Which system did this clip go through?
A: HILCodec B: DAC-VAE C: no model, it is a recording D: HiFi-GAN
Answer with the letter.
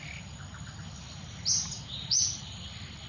C